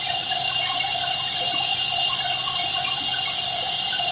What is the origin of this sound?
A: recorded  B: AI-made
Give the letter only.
A